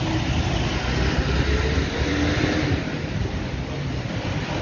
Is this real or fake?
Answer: real